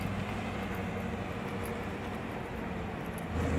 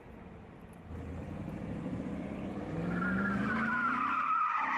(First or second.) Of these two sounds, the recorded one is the first